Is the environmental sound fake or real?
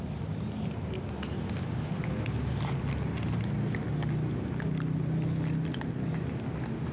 real